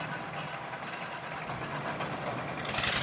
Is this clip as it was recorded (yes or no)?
yes